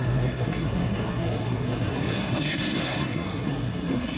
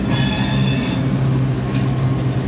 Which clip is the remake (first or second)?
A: first